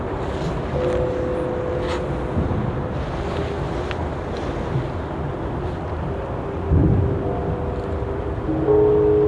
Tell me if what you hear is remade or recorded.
recorded